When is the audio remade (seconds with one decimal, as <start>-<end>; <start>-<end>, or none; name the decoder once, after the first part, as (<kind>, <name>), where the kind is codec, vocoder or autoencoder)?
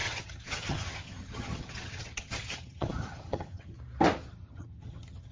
0.0-3.7 (vocoder, HiFi-GAN); 4.3-5.3